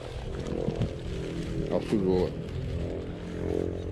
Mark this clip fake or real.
real